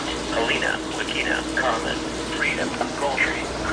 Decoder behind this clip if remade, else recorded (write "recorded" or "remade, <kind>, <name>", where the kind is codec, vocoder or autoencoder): recorded